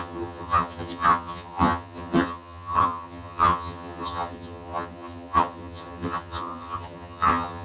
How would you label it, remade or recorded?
remade